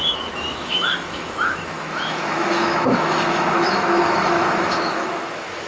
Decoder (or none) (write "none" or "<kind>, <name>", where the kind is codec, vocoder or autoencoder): autoencoder, DAC-VAE